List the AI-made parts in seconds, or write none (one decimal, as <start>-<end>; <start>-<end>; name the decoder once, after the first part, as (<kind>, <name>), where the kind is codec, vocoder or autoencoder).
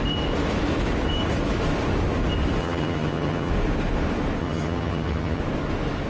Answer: 2.6-3.5 (vocoder, HiFi-GAN); 4.4-5.4